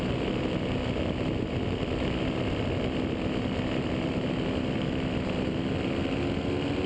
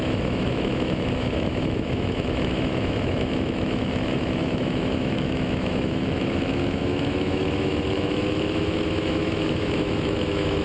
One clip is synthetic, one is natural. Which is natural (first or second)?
first